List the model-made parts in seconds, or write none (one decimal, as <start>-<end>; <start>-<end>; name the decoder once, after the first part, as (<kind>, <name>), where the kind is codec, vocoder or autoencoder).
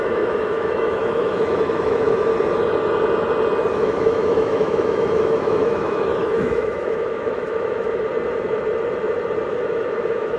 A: 0.0-2.3 (autoencoder, DAC-VAE); 3.7-8.1; 9.5-10.4